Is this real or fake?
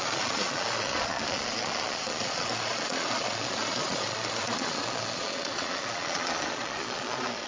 fake